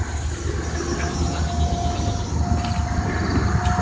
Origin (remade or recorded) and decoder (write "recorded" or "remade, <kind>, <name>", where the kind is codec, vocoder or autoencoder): recorded